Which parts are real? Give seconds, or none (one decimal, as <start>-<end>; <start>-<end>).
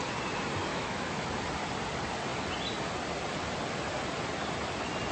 0.0-0.7; 1.3-5.1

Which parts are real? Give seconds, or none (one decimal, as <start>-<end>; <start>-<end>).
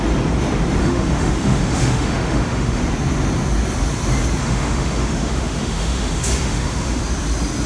0.0-0.8; 2.8-4.4; 7.0-7.7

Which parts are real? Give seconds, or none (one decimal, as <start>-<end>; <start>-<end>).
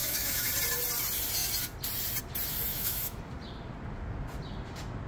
0.5-2.7; 3.2-5.1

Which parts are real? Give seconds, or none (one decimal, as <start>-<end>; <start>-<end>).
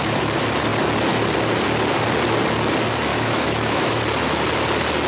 0.0-3.1; 4.0-5.1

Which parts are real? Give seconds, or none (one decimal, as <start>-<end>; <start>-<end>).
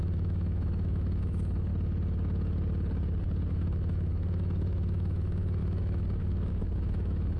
1.7-3.5